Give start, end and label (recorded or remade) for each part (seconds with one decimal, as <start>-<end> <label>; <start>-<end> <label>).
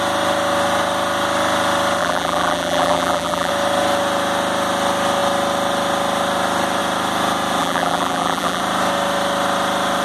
0.0-2.0 recorded; 2.0-3.5 remade; 3.5-7.6 recorded; 7.6-8.6 remade; 8.6-10.0 recorded